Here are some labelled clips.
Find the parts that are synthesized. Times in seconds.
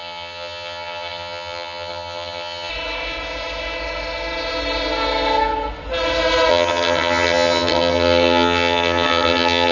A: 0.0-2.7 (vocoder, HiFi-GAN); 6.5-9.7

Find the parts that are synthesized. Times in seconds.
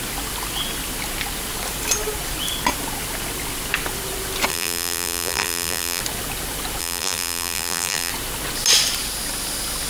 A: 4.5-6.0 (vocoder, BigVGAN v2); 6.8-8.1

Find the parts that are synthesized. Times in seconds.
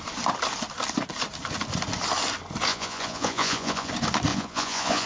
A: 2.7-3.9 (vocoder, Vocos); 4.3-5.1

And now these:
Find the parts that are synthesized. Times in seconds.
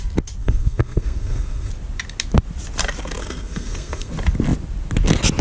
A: 0.4-1.7 (codec, SNAC); 3.2-4.1